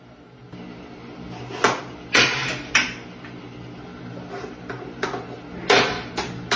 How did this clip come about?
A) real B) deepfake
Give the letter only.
A